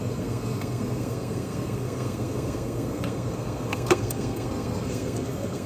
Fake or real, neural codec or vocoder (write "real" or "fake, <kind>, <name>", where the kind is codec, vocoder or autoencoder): fake, codec, SNAC